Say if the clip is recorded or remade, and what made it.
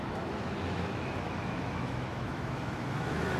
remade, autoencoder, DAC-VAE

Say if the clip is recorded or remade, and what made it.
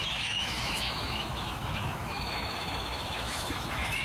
remade, autoencoder, DAC-VAE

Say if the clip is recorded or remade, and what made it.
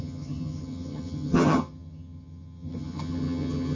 remade, vocoder, HiFi-GAN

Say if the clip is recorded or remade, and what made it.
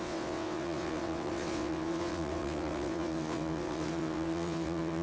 remade, vocoder, WaveNeXt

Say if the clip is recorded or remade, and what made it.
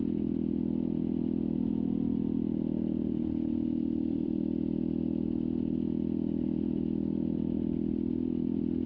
remade, vocoder, BigVGAN v2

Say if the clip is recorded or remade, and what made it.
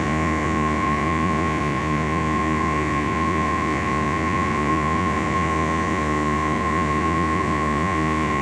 remade, vocoder, Vocos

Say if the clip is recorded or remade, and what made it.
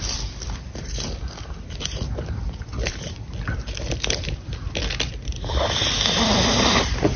remade, vocoder, BigVGAN v2